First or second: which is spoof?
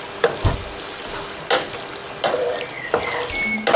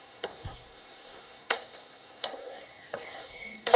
second